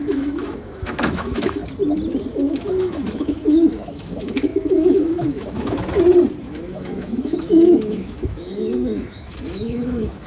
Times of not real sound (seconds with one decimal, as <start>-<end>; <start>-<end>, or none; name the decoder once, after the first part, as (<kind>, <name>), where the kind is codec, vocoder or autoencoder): 0.0-1.6 (autoencoder, DAC-VAE); 2.3-5.8; 6.4-10.3